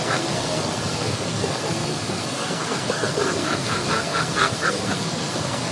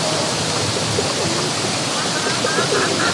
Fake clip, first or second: first